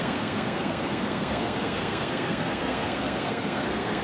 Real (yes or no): no